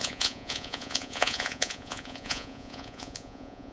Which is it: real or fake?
fake